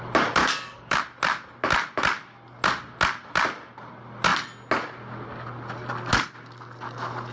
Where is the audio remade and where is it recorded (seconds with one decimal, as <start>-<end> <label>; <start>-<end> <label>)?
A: 0.0-0.4 recorded; 0.4-1.0 remade; 1.0-7.3 recorded